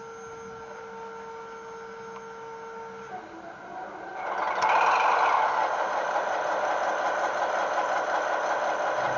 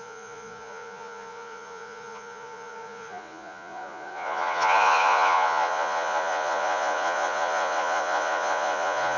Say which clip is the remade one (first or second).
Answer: second